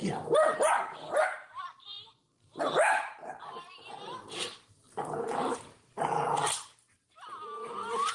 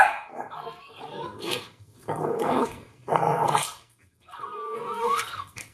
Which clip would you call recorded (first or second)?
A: first